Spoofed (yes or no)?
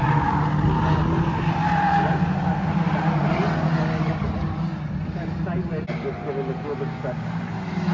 no